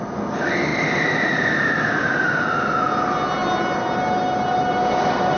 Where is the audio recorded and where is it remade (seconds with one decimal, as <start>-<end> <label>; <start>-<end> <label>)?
0.0-5.4 recorded